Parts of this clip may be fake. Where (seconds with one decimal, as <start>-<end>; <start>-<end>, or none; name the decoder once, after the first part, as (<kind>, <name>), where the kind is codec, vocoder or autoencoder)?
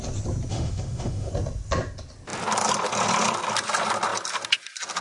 0.5-1.3 (autoencoder, DAC-VAE)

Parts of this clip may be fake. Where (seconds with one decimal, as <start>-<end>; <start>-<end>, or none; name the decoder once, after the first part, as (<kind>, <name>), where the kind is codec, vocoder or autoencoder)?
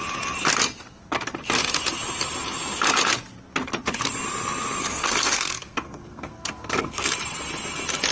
4.8-7.1 (codec, SNAC)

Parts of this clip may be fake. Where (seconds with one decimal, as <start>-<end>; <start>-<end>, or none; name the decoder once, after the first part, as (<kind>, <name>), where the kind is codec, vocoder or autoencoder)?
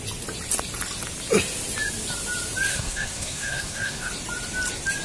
2.7-4.1 (codec, SNAC)